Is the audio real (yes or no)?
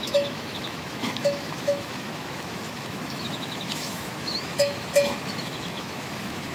no